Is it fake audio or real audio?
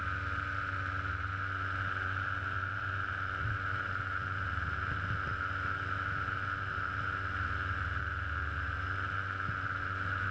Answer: real